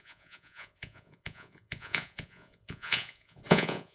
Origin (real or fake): fake